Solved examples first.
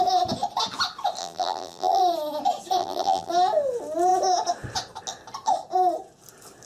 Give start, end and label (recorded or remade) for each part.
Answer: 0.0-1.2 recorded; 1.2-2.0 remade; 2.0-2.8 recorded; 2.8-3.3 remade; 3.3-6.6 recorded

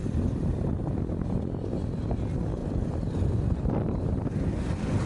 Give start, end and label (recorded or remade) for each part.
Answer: 0.0-1.4 remade; 1.4-2.6 recorded; 2.6-3.6 remade; 3.6-5.1 recorded

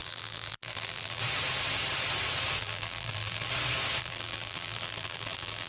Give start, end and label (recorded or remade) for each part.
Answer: 0.0-1.2 remade; 1.2-2.6 recorded; 2.6-3.5 remade; 3.5-4.0 recorded; 4.0-5.7 remade

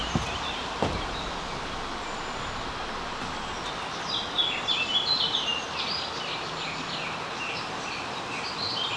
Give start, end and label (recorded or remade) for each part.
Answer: 0.0-0.6 remade; 0.6-9.0 recorded

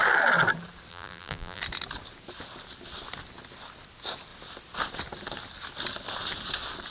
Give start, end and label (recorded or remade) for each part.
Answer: 0.0-0.9 recorded; 0.9-1.6 remade; 1.6-6.9 recorded